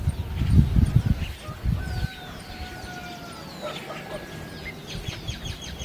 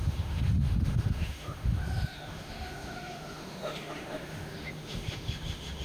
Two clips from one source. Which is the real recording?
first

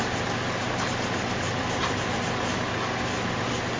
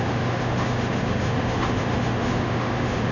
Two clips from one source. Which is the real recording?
first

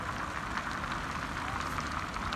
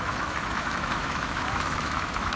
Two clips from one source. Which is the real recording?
first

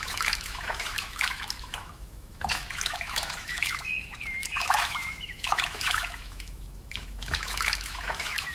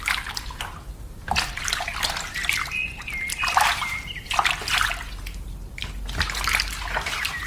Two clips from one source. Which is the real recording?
second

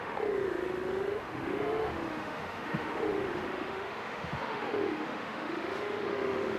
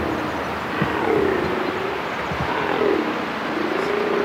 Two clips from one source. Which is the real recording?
second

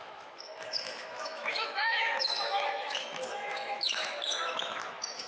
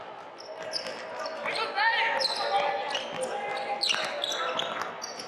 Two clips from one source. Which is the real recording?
second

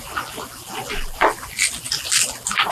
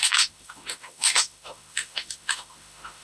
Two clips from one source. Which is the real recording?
first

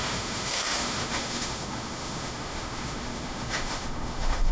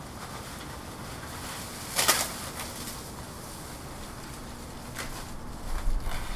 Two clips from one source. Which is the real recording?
second